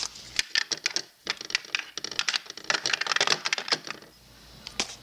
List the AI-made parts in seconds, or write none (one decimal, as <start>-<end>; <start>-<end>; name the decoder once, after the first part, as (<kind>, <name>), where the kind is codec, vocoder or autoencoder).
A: none